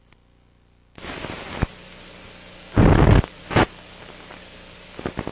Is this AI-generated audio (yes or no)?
no